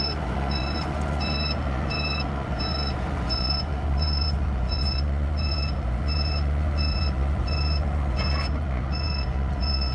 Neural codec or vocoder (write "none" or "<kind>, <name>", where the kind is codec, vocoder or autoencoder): vocoder, Vocos